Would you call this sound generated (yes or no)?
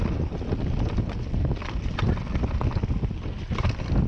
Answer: no